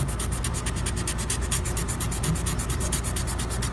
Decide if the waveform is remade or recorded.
recorded